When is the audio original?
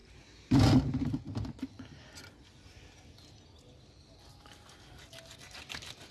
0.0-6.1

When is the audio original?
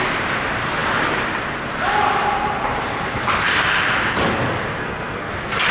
0.0-4.8; 5.3-5.7